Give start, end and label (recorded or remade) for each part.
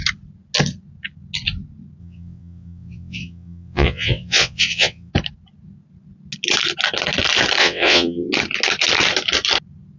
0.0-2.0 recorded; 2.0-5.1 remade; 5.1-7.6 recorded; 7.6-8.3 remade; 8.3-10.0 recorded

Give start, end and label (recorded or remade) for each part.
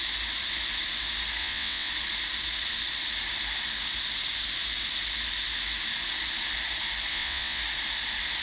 0.0-1.4 recorded; 1.4-1.9 remade; 1.9-7.1 recorded; 7.1-7.6 remade; 7.6-8.4 recorded